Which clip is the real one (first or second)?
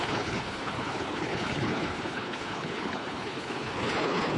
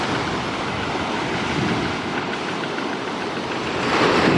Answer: second